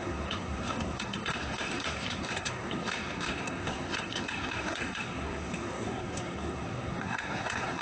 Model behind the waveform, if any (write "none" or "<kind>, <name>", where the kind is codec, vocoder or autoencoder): codec, SNAC